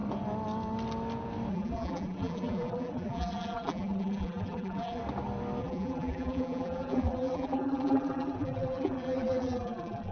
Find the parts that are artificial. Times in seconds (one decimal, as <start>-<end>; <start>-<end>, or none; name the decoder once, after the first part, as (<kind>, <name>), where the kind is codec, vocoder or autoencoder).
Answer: 1.5-5.0 (vocoder, BigVGAN v2); 5.6-10.1